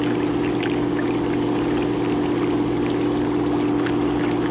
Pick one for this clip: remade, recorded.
recorded